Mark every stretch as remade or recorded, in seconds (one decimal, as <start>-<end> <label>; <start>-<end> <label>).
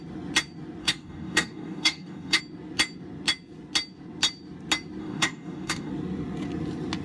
0.0-0.8 recorded; 0.8-2.4 remade; 2.4-5.0 recorded; 5.0-5.9 remade; 5.9-7.0 recorded